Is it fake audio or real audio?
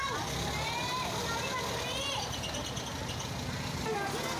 real